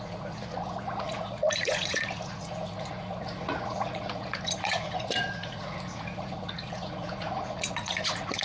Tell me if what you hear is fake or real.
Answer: fake